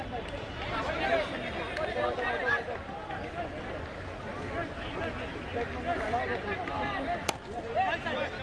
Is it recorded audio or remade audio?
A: recorded